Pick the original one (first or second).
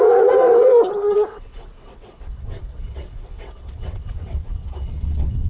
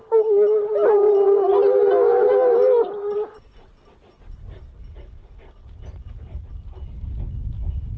second